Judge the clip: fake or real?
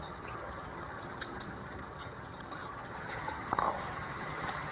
fake